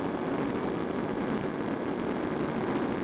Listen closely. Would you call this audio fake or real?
real